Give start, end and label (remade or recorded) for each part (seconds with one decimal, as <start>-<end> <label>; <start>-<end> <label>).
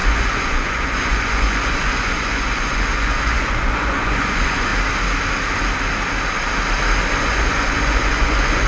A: 0.0-4.7 remade; 4.7-7.2 recorded; 7.2-8.7 remade